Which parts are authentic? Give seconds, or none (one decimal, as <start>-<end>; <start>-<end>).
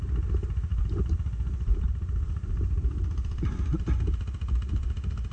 0.0-5.3